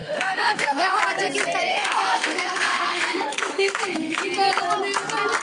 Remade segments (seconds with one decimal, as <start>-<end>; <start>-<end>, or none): 0.0-1.0; 1.7-4.2

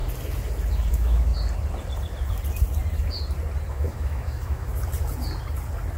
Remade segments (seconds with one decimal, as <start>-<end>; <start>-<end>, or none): 0.9-1.3; 3.7-4.7

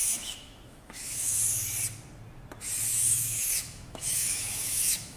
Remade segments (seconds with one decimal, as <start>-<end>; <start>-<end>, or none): 0.0-1.4; 2.9-5.2

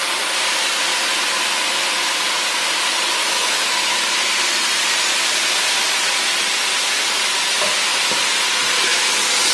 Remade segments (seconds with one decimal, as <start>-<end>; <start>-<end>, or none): 3.2-4.0

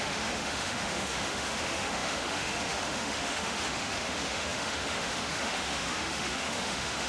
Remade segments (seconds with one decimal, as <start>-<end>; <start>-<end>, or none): 0.0-7.1

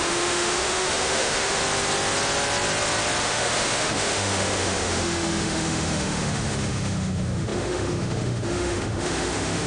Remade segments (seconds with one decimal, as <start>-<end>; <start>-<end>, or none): 0.0-1.6; 3.2-9.7

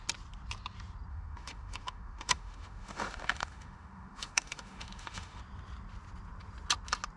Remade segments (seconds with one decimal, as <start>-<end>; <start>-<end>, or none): 1.1-5.4